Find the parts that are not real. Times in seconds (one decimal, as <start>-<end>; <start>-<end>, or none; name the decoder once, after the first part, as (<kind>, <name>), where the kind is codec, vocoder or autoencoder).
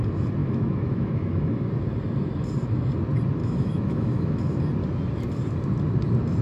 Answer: 0.4-1.7 (autoencoder, DAC-VAE); 3.4-4.4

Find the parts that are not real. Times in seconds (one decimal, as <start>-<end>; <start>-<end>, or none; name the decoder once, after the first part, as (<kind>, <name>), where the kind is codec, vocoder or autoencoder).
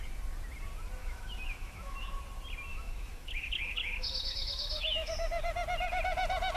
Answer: 1.0-2.2 (autoencoder, DAC-VAE); 2.7-5.1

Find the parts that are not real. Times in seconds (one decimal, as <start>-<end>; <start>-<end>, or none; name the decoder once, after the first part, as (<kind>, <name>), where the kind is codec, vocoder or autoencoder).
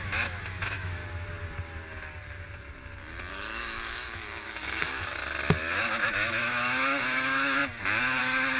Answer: 0.0-1.0 (autoencoder, DAC-VAE); 3.3-5.2; 5.8-7.6; 8.2-8.6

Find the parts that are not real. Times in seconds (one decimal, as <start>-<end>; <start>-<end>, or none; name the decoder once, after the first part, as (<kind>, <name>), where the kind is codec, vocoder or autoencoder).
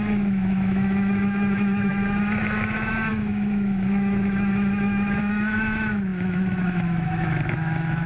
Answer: 0.0-8.1 (autoencoder, DAC-VAE)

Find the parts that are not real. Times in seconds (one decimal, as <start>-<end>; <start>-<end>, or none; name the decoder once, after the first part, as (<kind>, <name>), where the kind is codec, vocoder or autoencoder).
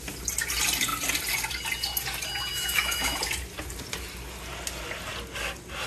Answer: 2.5-3.2 (autoencoder, DAC-VAE)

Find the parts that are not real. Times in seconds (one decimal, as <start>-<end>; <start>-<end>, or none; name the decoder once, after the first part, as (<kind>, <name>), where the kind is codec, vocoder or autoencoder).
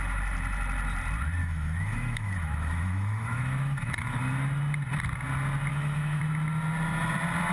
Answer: 1.4-4.2 (autoencoder, DAC-VAE); 5.7-6.2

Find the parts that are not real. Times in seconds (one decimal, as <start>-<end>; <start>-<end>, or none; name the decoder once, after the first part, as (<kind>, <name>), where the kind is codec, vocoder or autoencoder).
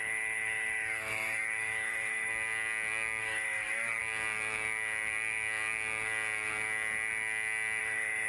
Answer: 0.0-2.3 (autoencoder, DAC-VAE); 3.2-4.0; 7.8-8.3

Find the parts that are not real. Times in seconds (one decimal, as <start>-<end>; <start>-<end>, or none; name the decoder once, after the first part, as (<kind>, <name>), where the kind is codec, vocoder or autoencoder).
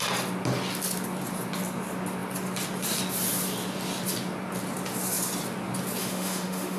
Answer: 6.0-6.8 (autoencoder, DAC-VAE)